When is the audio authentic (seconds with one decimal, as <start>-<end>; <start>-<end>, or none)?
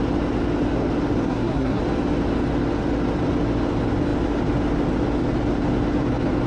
0.0-1.2; 1.8-6.5